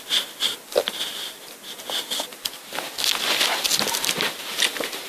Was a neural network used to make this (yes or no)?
no